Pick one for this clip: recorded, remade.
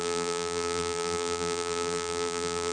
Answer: remade